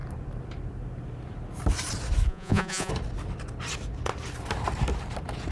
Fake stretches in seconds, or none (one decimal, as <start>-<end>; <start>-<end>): 2.3-2.9